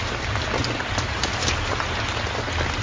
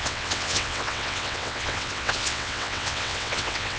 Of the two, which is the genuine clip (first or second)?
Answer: first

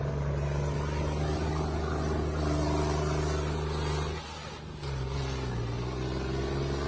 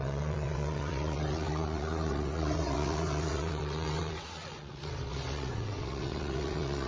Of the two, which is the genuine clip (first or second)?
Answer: first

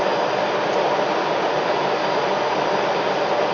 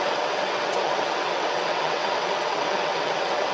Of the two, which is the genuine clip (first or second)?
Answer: first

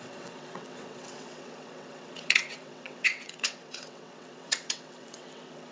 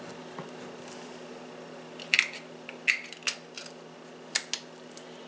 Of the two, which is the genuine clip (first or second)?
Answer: second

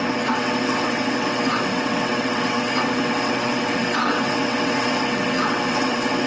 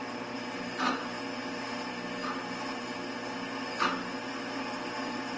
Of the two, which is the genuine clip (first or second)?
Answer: second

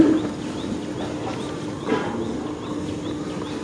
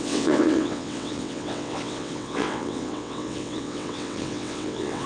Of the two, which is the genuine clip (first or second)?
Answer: first